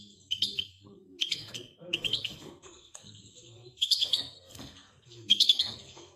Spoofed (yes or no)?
yes